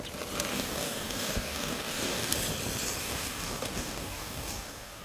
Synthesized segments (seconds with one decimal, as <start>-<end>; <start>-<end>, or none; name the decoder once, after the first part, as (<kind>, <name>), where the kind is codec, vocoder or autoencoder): 0.5-2.3 (codec, DAC); 3.0-5.0